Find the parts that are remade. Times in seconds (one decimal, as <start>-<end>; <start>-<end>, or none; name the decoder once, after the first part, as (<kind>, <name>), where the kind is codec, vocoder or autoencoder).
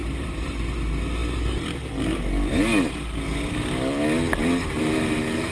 0.0-0.5 (vocoder, BigVGAN v2); 4.6-5.5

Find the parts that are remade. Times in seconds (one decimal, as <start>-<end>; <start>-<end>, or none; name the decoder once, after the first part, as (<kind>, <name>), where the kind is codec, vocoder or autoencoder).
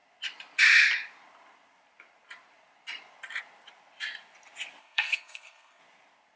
4.8-5.8 (codec, SNAC)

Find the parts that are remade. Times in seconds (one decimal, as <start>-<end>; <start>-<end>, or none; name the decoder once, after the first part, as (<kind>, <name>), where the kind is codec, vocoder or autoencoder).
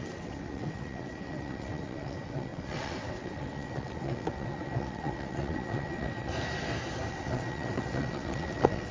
0.0-6.3 (vocoder, WaveNeXt); 7.1-8.9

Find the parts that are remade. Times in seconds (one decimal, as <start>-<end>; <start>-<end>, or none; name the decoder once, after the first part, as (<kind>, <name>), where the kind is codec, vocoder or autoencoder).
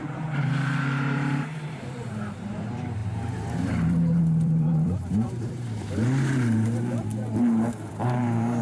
0.0-7.1 (vocoder, BigVGAN v2); 7.8-8.6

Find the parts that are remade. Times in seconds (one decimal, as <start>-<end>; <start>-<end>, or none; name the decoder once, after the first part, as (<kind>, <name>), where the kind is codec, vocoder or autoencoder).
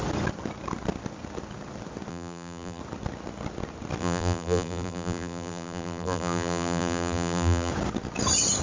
2.1-2.8 (vocoder, BigVGAN v2); 4.0-7.7